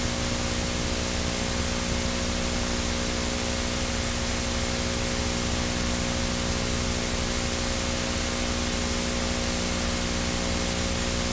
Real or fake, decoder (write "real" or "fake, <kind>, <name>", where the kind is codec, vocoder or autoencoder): real